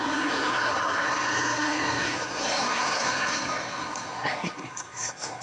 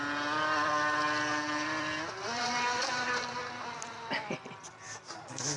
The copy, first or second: first